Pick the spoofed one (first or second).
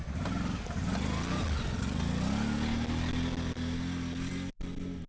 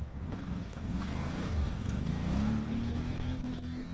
second